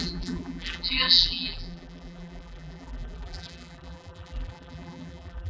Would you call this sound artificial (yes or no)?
yes